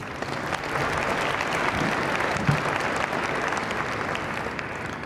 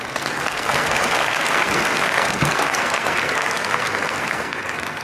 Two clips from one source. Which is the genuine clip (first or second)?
first